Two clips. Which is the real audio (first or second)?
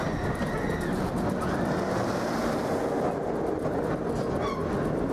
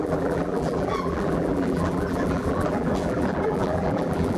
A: first